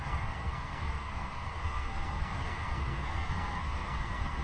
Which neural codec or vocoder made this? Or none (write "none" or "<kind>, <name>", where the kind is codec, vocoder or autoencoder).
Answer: codec, SNAC